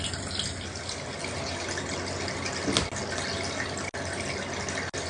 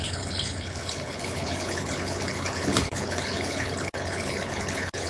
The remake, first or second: second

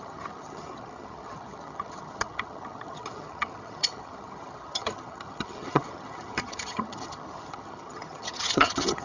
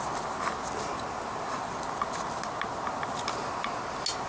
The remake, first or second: first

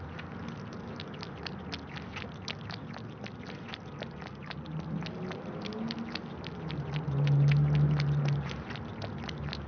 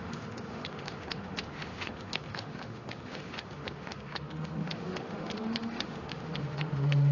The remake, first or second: second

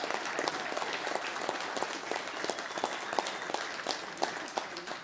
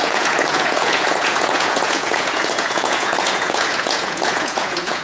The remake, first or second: second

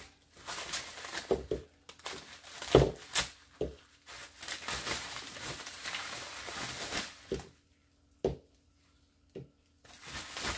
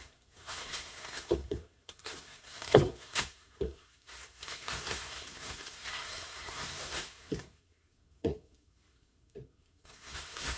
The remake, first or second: second